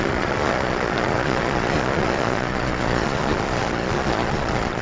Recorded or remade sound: remade